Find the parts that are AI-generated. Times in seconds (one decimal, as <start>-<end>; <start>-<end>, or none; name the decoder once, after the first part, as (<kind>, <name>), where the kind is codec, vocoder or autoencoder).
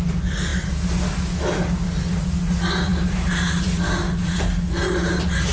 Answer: none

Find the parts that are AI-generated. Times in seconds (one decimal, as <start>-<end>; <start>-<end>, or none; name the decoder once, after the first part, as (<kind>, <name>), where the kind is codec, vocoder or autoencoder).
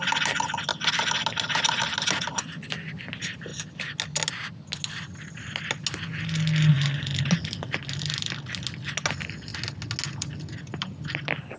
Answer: none